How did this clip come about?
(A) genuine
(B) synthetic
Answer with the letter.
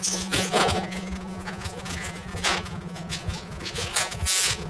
B